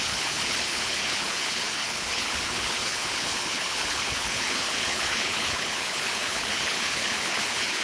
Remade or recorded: remade